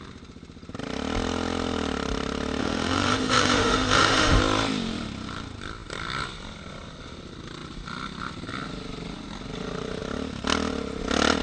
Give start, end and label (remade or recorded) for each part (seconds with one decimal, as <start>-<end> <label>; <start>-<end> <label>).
0.0-2.6 recorded; 2.6-4.4 remade; 4.4-11.4 recorded